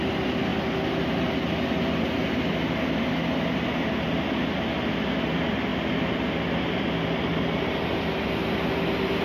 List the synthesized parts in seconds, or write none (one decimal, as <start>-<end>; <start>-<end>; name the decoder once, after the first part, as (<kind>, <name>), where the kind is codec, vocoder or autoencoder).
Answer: none